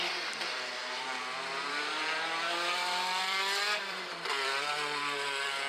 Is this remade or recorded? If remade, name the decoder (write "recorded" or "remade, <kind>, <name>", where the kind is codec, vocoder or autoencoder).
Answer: remade, vocoder, BigVGAN v2